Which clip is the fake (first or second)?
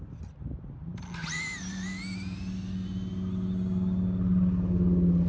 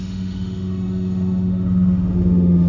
second